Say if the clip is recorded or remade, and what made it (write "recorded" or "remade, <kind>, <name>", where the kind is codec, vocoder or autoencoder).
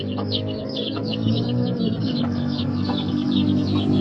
remade, codec, SNAC